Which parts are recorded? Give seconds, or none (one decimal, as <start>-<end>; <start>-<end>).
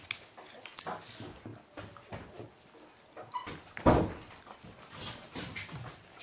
0.0-6.2